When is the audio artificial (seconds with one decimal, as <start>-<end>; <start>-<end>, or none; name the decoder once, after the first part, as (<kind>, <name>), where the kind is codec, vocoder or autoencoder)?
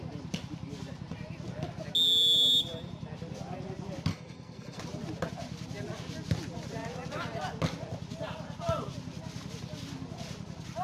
4.1-4.8 (codec, SNAC)